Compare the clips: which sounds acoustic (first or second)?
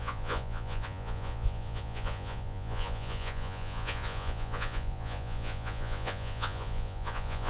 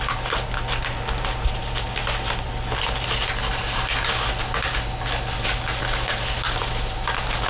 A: second